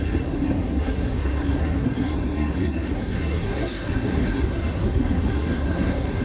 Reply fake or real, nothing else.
fake